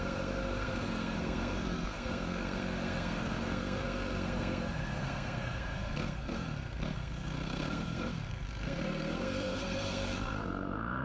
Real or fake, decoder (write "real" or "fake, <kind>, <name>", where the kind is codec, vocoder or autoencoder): fake, codec, SNAC